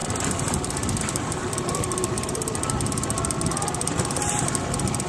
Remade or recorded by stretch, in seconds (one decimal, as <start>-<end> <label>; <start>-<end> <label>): 0.0-1.4 recorded; 1.4-4.5 remade; 4.5-5.1 recorded